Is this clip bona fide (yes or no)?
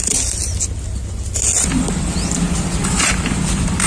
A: yes